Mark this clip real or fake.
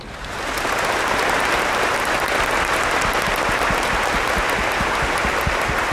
real